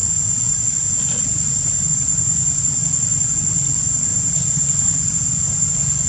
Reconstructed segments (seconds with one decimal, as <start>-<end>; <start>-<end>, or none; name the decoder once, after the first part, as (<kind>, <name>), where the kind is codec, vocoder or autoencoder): 4.1-4.6 (vocoder, BigVGAN v2)